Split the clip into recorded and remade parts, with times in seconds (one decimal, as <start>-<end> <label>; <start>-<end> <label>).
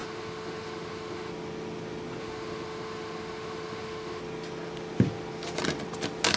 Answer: 0.0-1.3 remade; 1.3-2.2 recorded; 2.2-4.2 remade; 4.2-6.4 recorded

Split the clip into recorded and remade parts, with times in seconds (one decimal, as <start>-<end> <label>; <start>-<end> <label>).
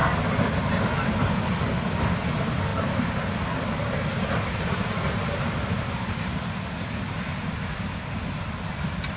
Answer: 0.0-9.2 recorded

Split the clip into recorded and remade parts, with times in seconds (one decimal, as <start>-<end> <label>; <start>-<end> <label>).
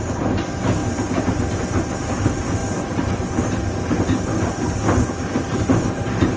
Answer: 0.0-0.8 remade; 0.8-2.0 recorded; 2.0-2.6 remade; 2.6-5.9 recorded; 5.9-6.4 remade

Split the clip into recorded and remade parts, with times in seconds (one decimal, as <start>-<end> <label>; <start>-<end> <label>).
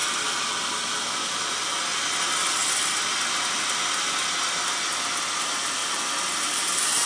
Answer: 0.0-1.9 remade; 1.9-5.8 recorded; 5.8-7.1 remade